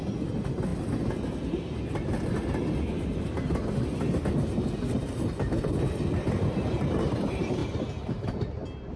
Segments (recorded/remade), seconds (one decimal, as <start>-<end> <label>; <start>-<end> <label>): 0.0-9.0 recorded